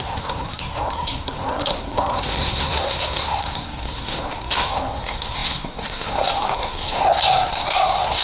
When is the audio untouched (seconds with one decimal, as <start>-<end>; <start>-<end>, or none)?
none